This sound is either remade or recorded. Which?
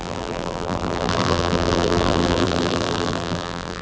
remade